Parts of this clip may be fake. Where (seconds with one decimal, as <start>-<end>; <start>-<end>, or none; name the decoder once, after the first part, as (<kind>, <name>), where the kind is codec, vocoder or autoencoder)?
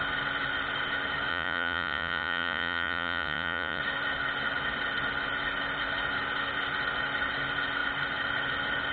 1.3-3.8 (vocoder, Vocos)